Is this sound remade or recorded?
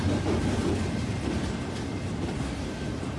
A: recorded